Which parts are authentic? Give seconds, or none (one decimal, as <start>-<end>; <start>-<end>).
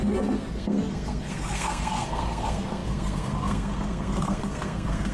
none